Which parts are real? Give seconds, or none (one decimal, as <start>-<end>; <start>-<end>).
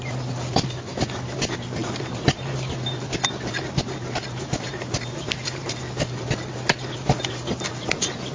0.0-8.3